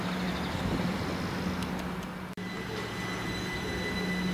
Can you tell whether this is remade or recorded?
recorded